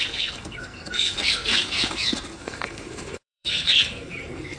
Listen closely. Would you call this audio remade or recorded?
remade